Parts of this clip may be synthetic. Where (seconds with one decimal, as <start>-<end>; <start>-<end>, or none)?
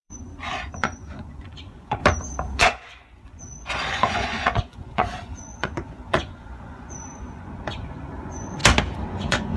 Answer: 0.0-2.0; 2.6-8.6; 9.1-9.6